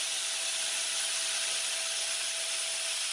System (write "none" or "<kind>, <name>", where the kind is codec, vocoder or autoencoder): none